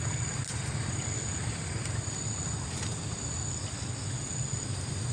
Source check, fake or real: real